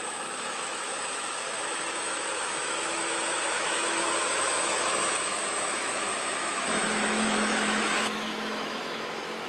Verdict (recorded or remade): remade